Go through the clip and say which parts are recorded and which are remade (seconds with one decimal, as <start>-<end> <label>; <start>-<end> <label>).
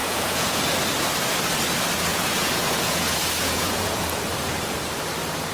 0.0-0.6 remade; 0.6-2.1 recorded; 2.1-4.2 remade; 4.2-5.5 recorded